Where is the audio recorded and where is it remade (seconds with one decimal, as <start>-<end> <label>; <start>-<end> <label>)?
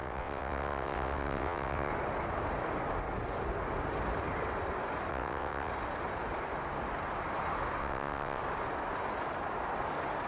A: 0.0-1.9 remade; 1.9-5.1 recorded; 5.1-5.7 remade; 5.7-7.8 recorded; 7.8-8.4 remade; 8.4-10.3 recorded